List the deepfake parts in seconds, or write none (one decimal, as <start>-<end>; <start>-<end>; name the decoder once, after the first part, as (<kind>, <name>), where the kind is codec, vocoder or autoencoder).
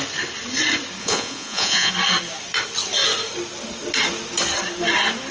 1.0-1.9 (vocoder, Vocos)